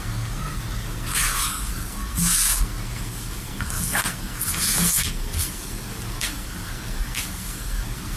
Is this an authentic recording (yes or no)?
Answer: no